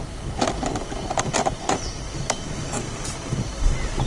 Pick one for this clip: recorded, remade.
recorded